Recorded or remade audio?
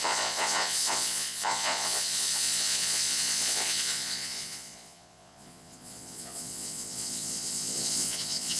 remade